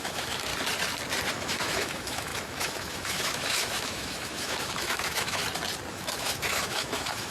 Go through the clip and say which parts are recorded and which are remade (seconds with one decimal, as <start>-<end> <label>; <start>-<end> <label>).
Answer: 0.0-0.5 remade; 0.5-1.3 recorded; 1.3-5.4 remade; 5.4-5.9 recorded; 5.9-7.3 remade